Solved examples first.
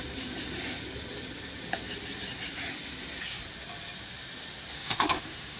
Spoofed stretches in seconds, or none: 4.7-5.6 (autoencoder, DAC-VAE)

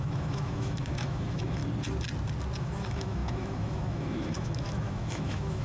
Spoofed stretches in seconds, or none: 0.0-1.6 (autoencoder, DAC-VAE); 2.6-5.6

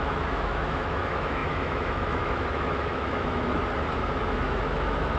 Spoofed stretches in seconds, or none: 0.0-3.6 (autoencoder, DAC-VAE); 4.2-5.2

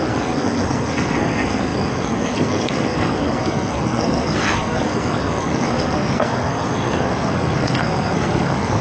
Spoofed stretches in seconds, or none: 0.0-8.8 (codec, SNAC)

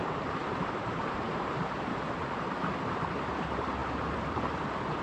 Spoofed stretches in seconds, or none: 0.0-5.0 (vocoder, BigVGAN v2)